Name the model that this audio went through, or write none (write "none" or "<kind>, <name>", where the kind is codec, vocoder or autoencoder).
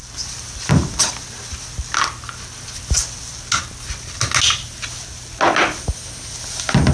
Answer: none